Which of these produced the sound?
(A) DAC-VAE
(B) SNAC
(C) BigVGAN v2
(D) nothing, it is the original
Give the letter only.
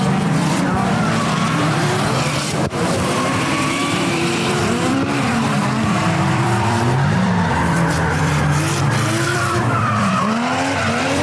C